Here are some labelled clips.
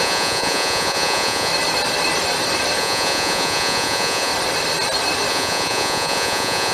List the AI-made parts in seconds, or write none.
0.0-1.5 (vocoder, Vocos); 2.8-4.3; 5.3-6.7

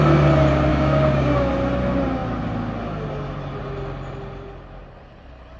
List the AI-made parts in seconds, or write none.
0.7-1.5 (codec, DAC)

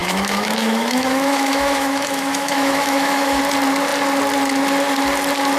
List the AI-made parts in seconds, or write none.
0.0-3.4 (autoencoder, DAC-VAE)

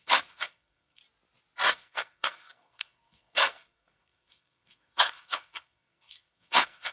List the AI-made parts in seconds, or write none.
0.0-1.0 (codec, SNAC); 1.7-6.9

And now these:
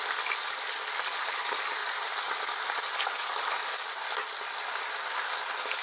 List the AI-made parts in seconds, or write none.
none